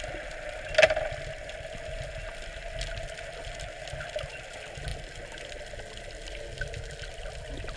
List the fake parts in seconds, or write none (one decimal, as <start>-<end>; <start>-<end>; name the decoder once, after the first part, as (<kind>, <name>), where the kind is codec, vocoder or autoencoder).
4.9-5.4 (vocoder, BigVGAN v2)